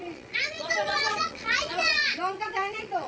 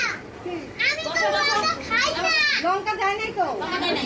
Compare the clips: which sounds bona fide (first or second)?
second